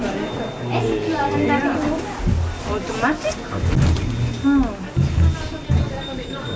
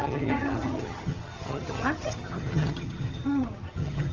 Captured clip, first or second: first